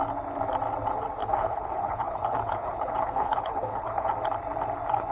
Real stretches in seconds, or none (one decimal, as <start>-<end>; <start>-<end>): 0.0-1.2; 4.1-5.1